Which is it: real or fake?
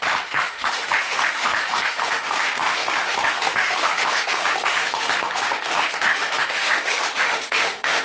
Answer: fake